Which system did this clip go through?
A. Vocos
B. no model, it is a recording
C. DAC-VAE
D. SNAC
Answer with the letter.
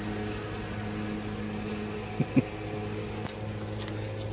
B